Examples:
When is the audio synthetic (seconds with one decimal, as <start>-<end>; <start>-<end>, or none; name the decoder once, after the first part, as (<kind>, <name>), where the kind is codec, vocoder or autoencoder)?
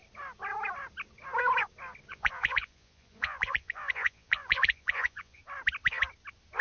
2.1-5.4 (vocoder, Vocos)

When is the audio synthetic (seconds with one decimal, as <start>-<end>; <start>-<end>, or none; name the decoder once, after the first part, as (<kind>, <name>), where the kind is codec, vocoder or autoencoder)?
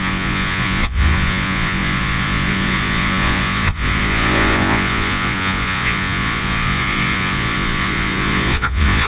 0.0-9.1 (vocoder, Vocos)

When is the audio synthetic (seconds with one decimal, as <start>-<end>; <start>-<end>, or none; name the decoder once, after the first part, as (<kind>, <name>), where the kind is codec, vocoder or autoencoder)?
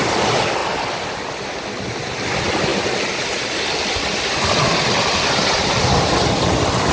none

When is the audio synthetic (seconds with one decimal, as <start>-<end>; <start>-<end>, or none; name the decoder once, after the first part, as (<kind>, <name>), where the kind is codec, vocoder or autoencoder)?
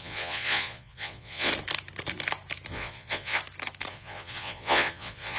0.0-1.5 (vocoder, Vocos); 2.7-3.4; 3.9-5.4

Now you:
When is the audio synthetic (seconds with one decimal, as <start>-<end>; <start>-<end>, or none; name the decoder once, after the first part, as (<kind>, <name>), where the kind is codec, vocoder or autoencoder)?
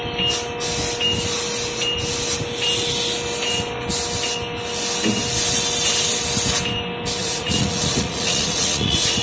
7.2-9.2 (vocoder, Vocos)